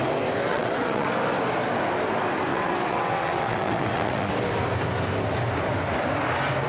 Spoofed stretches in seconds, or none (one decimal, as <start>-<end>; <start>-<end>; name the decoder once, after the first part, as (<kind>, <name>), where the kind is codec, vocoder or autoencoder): 0.5-1.1 (vocoder, WaveNeXt); 2.5-4.3